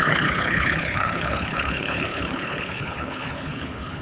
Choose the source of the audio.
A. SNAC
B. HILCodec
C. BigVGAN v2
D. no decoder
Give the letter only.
B